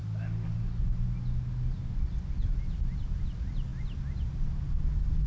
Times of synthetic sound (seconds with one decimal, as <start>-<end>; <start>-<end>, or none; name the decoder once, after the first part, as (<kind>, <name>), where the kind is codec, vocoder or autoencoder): none